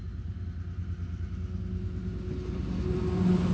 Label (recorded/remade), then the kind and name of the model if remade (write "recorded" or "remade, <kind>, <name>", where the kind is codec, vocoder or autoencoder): recorded